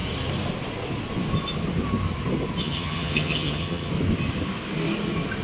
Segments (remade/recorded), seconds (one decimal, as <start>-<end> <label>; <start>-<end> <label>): 0.0-2.6 recorded; 2.6-3.9 remade; 3.9-5.4 recorded